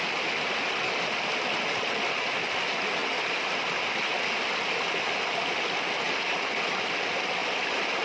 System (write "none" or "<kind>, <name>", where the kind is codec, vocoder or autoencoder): none